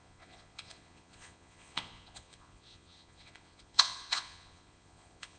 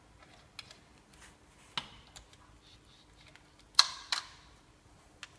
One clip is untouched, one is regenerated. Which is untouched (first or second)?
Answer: second